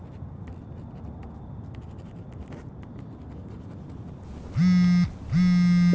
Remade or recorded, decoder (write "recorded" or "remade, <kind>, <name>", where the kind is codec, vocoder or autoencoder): recorded